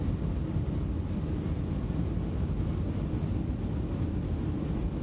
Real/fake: real